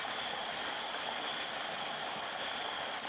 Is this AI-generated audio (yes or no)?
no